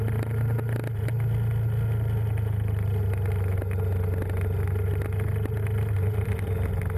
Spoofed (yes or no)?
no